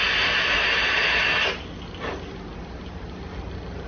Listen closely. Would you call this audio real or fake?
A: real